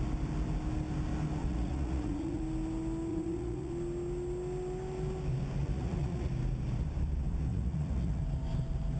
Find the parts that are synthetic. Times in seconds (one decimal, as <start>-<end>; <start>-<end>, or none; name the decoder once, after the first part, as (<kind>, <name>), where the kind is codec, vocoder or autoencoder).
1.4-2.4 (vocoder, Vocos); 3.1-3.7; 5.6-6.3; 7.5-8.2